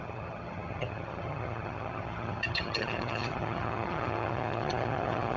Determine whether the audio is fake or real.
fake